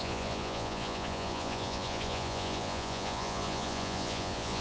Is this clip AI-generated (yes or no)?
yes